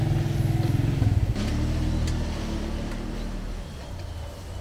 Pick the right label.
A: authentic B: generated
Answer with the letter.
A